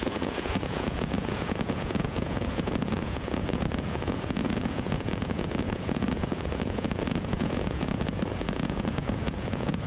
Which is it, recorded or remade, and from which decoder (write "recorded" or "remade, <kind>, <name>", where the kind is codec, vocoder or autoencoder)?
remade, vocoder, Vocos